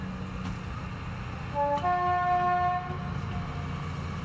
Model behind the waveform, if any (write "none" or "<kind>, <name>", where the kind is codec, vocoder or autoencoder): none